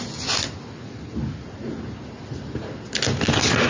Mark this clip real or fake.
real